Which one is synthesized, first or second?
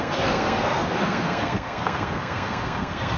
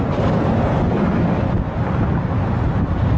first